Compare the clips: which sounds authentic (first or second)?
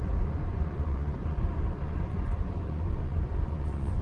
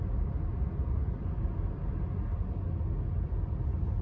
second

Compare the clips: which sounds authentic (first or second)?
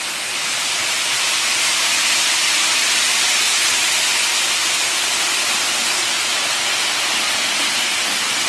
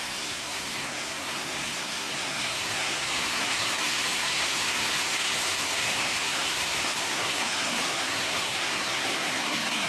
first